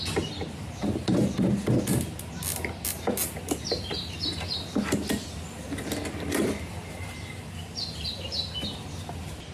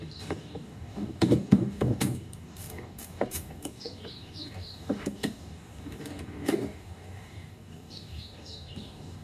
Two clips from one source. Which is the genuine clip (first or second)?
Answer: first